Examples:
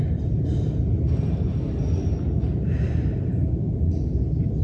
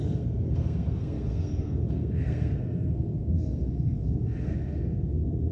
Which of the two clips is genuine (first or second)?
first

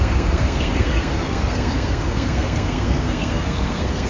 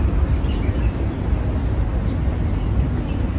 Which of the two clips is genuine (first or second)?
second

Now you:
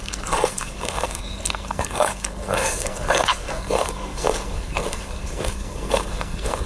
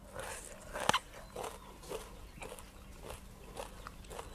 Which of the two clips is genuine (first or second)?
second